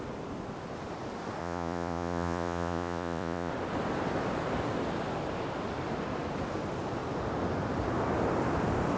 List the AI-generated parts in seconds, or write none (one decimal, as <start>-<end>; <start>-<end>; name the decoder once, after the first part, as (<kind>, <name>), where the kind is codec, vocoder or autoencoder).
1.4-3.5 (vocoder, Vocos)